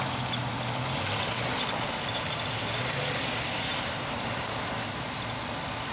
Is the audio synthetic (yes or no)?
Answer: no